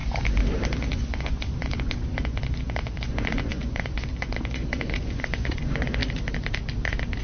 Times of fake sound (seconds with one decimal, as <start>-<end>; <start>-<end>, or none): 0.9-6.0

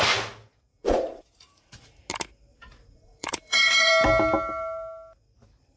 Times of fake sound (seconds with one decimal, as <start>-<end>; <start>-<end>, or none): 0.7-2.1; 2.5-3.9

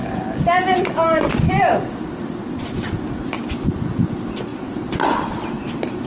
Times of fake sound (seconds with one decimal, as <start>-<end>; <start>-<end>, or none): none

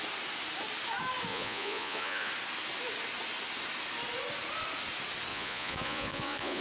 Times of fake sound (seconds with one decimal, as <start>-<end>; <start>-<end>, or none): 1.3-2.3; 5.3-6.6

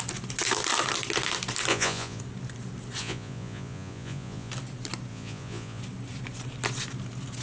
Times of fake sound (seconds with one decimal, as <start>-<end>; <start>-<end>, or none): 1.7-2.2; 3.0-4.5; 5.1-5.8

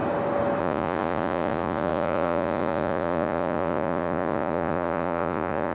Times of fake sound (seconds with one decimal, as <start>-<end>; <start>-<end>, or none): 0.6-5.7

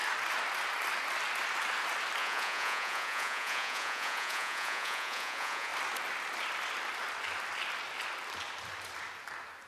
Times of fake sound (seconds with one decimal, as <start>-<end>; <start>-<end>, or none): 2.2-5.7